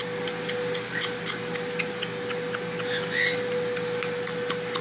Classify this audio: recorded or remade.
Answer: recorded